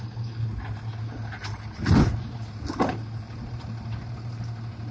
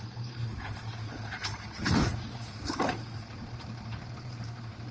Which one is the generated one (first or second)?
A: second